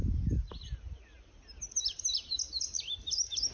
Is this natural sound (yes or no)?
yes